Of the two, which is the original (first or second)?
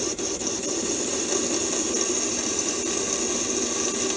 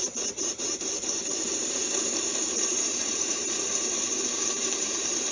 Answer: first